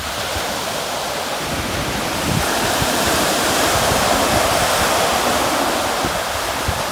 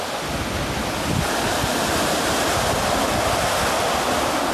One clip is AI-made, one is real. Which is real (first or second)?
second